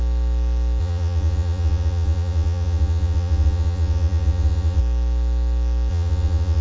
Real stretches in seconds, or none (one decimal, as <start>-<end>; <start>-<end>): 0.0-0.8; 4.8-5.9